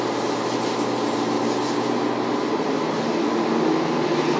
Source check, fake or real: real